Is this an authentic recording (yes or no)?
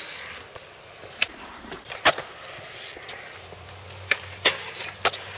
yes